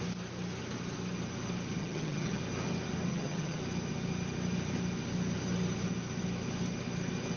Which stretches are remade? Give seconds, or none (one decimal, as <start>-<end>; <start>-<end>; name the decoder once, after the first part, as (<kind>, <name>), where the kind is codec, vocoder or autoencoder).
1.8-2.4 (vocoder, HiFi-GAN); 3.1-3.6